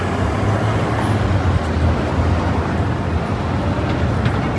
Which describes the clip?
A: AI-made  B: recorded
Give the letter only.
B